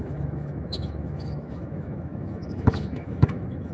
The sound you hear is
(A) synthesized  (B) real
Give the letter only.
A